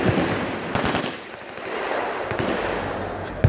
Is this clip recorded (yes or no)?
yes